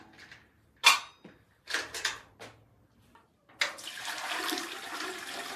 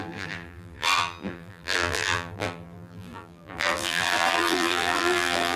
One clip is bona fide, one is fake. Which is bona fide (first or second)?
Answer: first